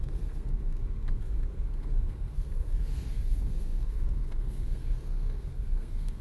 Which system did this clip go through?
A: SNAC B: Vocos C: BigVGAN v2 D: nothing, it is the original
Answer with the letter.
A